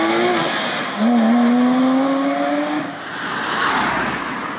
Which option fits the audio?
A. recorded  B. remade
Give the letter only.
A